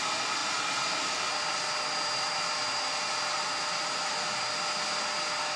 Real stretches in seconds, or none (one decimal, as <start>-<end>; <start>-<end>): 0.0-5.6